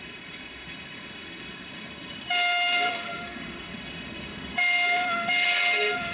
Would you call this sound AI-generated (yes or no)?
yes